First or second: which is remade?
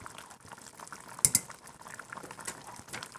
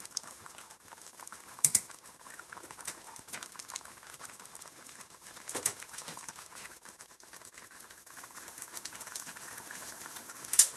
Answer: second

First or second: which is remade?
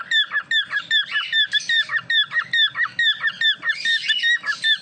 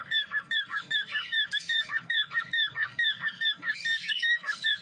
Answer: second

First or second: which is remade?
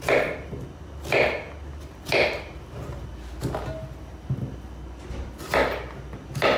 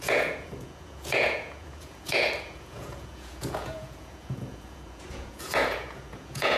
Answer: second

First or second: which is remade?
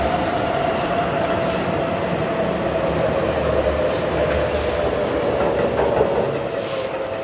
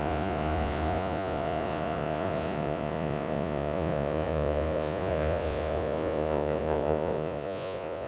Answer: second